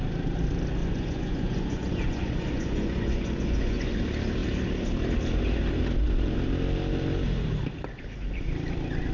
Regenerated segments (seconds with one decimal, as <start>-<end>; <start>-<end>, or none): 0.8-3.9